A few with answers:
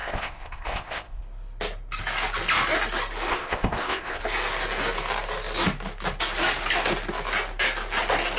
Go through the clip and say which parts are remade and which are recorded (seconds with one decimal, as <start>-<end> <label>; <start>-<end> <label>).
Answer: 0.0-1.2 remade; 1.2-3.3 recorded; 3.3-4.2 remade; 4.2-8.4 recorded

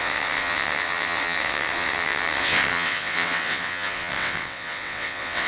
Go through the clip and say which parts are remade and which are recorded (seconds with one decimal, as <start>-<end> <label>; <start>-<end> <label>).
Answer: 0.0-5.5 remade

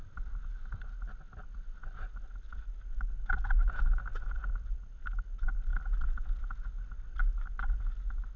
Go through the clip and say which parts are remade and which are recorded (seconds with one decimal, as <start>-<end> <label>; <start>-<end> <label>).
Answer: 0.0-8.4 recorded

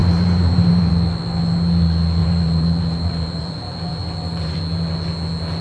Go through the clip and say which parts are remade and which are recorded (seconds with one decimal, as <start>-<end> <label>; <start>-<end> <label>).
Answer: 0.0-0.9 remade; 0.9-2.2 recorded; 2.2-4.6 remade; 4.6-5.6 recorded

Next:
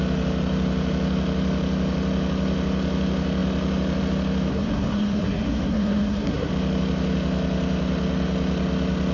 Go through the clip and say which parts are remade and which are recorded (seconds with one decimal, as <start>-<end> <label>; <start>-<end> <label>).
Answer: 0.0-4.5 recorded; 4.5-6.5 remade; 6.5-9.1 recorded

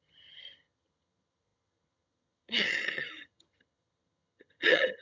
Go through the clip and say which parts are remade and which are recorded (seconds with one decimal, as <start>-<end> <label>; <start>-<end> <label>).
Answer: 0.0-5.0 remade

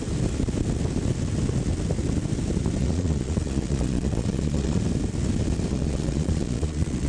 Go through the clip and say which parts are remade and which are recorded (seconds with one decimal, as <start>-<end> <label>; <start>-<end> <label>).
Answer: 0.0-2.8 recorded; 2.8-4.8 remade; 4.8-5.7 recorded; 5.7-7.1 remade

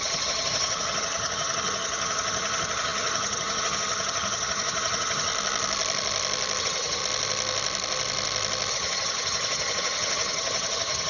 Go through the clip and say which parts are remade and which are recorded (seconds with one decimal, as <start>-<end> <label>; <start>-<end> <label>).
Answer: 0.0-5.3 remade; 5.3-6.6 recorded; 6.6-7.0 remade; 7.0-8.7 recorded; 8.7-11.1 remade